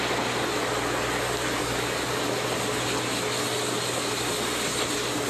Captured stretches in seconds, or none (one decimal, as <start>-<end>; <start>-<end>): 0.0-1.6; 2.2-5.3